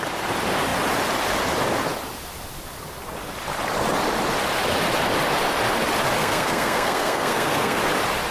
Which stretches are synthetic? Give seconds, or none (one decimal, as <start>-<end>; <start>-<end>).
6.2-7.8